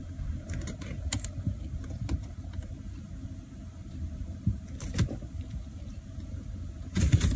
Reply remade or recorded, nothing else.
remade